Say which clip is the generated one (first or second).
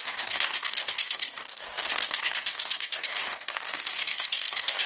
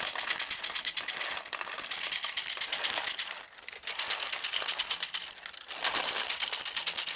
first